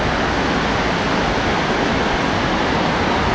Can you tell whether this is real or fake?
real